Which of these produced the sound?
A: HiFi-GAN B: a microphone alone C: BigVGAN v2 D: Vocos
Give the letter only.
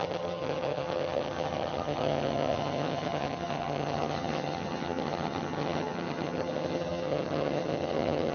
A